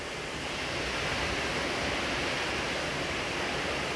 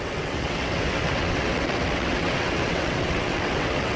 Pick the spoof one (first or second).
second